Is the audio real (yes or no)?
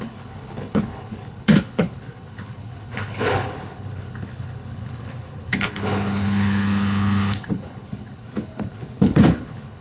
no